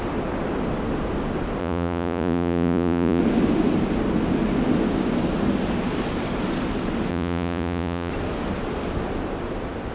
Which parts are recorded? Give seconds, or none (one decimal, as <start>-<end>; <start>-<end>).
0.0-1.6; 3.2-7.1; 8.1-9.9